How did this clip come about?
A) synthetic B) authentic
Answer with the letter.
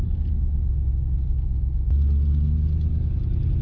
B